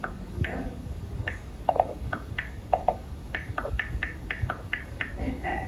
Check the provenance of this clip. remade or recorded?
remade